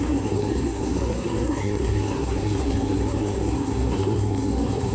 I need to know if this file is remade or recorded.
remade